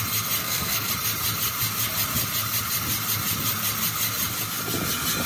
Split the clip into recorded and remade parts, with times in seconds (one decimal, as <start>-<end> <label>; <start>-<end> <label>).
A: 0.0-0.4 recorded; 0.4-0.9 remade; 0.9-5.3 recorded